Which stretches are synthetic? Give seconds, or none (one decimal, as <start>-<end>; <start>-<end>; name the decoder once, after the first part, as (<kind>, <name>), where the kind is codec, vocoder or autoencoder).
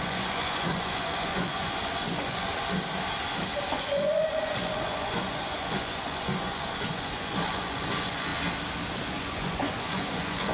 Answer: 0.0-2.5 (vocoder, Vocos); 3.7-8.3; 9.1-10.5